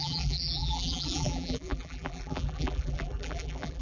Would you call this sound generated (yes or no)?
yes